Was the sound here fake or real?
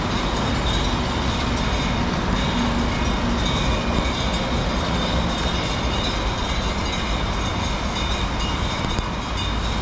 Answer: real